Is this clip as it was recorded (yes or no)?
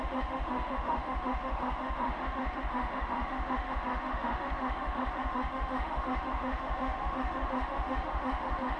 no